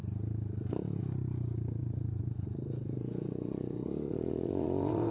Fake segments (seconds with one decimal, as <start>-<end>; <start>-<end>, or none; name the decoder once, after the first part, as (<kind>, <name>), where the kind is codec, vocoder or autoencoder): 1.8-5.1 (vocoder, Vocos)